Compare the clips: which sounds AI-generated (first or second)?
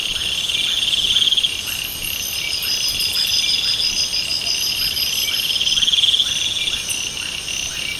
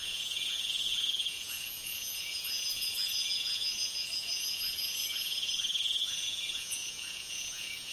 second